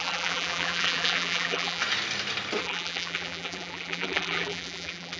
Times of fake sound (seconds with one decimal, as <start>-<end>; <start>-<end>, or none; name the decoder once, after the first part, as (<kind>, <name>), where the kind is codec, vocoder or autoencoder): 0.0-1.8 (vocoder, BigVGAN v2); 2.6-5.2